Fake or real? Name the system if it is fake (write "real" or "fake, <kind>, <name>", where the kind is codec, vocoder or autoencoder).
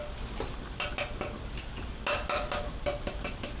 real